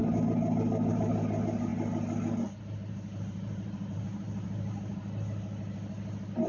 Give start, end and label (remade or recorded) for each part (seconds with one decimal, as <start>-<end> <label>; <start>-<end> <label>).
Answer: 0.0-0.9 recorded; 0.9-1.7 remade; 1.7-2.6 recorded; 2.6-4.9 remade; 4.9-6.5 recorded